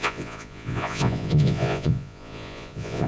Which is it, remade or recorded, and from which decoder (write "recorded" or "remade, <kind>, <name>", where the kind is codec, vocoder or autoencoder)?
remade, vocoder, Vocos